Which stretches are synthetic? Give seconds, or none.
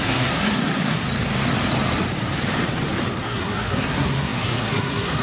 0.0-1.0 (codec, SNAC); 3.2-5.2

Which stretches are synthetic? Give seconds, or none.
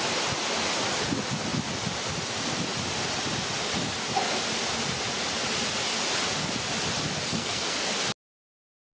7.3-7.9 (codec, SNAC)